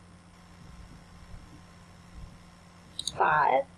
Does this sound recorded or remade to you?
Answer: recorded